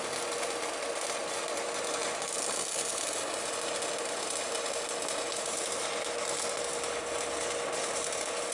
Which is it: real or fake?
real